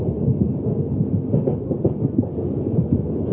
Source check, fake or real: real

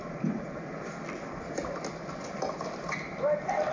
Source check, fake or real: fake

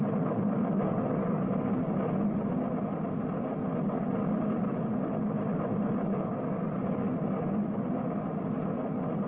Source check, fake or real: real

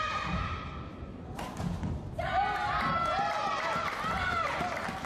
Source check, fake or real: real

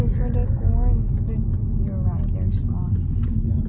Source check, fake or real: real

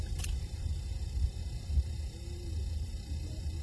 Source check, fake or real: real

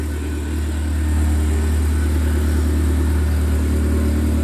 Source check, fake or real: real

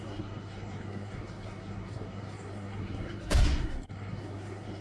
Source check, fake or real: fake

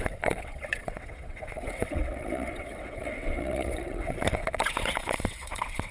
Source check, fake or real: fake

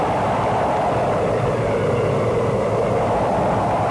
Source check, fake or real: real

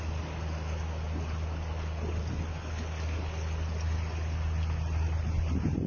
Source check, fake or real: real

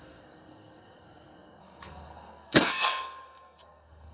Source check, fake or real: fake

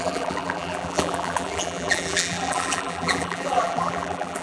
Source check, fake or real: fake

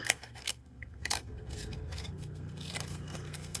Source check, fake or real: fake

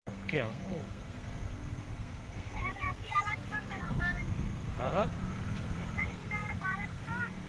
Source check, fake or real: fake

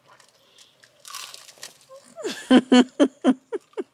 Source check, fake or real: real